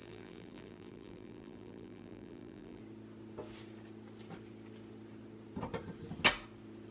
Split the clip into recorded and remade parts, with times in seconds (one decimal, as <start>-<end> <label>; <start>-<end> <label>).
0.0-2.8 remade; 2.8-6.9 recorded